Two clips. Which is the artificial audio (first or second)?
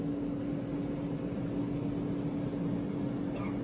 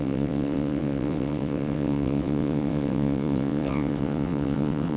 second